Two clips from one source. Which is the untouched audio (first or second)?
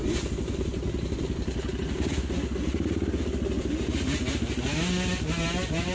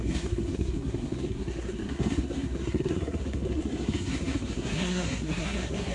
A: first